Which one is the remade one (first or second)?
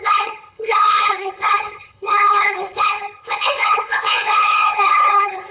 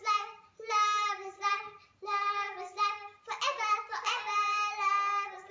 first